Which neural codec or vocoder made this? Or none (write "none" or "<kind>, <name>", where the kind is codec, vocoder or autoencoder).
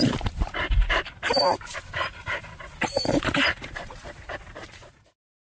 vocoder, BigVGAN v2